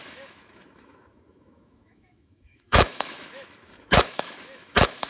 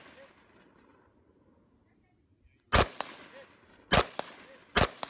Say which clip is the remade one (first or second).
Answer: first